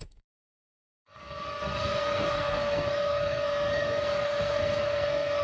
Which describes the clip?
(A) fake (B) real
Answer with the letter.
A